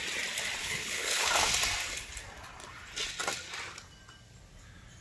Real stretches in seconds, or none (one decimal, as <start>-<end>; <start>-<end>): 0.0-0.6; 1.3-5.0